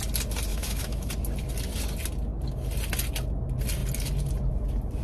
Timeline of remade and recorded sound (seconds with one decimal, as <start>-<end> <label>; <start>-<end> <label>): 0.0-0.5 recorded; 0.5-1.1 remade; 1.1-5.0 recorded